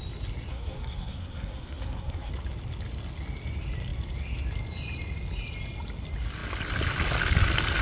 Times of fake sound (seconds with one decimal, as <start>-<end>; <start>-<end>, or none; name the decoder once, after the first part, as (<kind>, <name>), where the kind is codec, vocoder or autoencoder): 0.5-2.3 (codec, SNAC)